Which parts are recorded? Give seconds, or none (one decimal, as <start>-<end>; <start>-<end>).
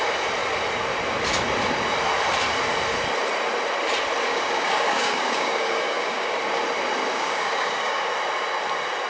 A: 0.0-4.3; 6.4-7.1; 8.1-9.1